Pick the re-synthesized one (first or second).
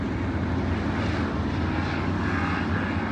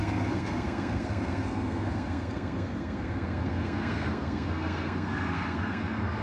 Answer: second